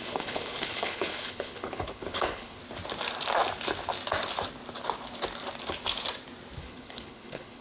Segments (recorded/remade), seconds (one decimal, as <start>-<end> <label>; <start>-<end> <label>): 0.0-2.6 remade; 2.6-6.6 recorded; 6.6-7.6 remade